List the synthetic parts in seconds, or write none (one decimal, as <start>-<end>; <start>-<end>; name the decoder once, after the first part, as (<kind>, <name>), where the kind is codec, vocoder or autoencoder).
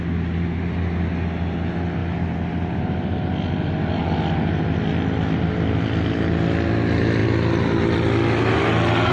none